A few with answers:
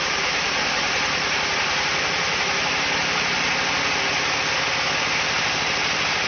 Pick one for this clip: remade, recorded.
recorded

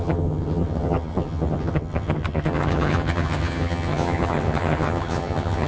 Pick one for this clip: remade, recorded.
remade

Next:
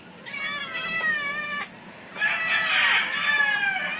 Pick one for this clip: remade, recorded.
recorded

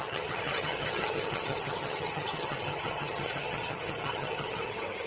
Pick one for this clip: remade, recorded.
remade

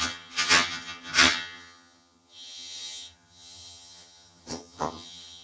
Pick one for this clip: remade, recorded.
remade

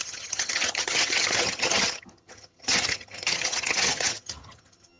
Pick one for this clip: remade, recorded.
remade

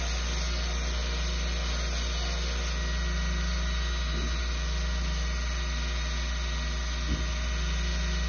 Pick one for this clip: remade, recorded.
recorded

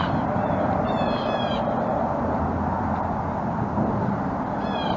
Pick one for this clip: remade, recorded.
recorded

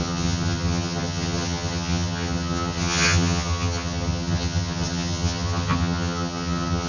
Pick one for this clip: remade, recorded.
remade